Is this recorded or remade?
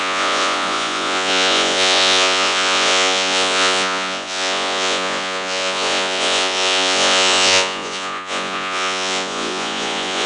remade